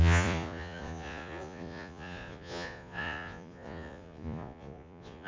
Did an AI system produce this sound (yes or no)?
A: yes